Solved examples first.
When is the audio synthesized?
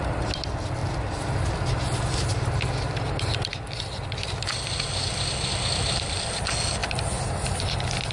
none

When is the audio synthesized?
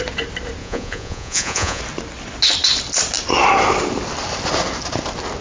0.6-1.8 (vocoder, Vocos)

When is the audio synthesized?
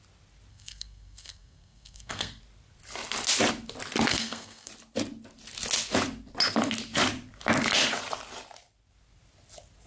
0.5-2.4 (codec, SNAC); 4.1-4.7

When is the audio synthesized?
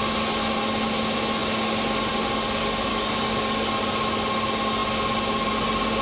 2.9-3.8 (codec, DAC)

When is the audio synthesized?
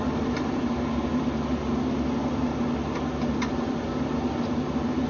none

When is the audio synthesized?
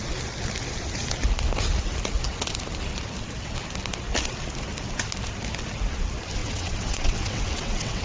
6.4-8.0 (vocoder, WaveNeXt)